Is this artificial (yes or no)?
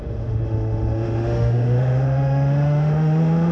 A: yes